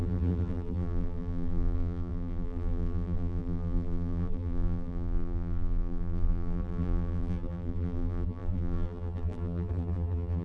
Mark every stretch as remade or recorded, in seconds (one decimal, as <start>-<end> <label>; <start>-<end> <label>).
0.0-10.4 remade